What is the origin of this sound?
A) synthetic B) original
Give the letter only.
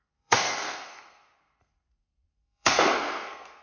A